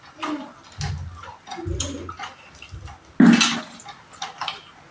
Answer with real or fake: real